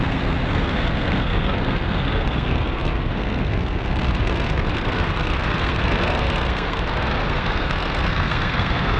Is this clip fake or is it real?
fake